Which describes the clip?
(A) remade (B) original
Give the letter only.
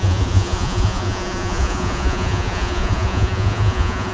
A